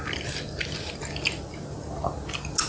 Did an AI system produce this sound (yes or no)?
no